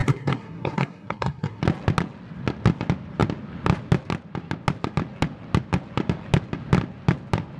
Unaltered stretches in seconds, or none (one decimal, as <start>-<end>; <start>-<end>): 1.6-7.6